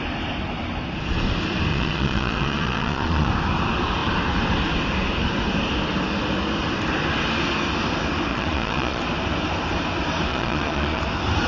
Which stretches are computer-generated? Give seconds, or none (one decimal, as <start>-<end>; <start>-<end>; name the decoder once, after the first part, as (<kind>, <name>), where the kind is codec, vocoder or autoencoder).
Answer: 1.7-3.3 (vocoder, Vocos); 8.3-9.0; 10.3-11.0